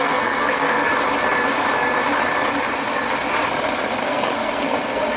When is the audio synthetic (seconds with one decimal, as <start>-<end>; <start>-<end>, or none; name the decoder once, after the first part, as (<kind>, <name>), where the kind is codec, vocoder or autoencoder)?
0.0-0.9 (codec, SNAC); 4.0-5.2